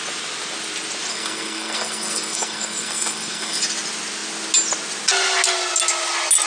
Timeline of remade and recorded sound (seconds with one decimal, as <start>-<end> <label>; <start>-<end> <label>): 0.0-1.1 recorded; 1.1-3.6 remade; 3.6-6.5 recorded